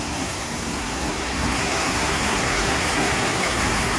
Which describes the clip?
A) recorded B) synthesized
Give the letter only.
B